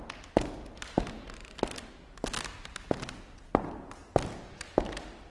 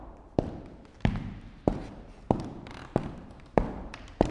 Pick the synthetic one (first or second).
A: second